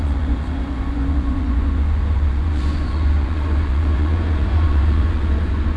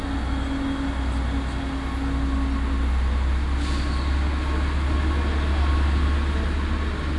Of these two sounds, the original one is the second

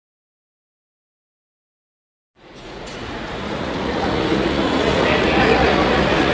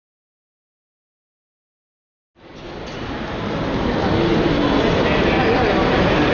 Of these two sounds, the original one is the second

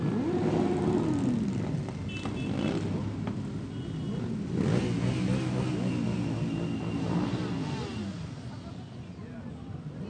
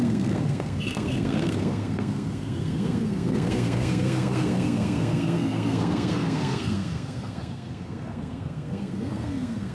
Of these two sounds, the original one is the first